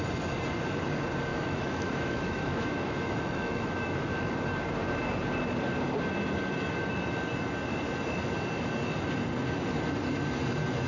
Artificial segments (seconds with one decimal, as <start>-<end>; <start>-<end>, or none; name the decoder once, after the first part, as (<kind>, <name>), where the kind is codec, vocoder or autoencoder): 1.3-4.3 (autoencoder, DAC-VAE)